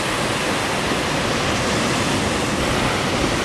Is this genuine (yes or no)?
yes